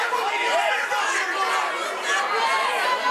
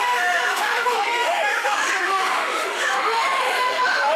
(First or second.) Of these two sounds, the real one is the first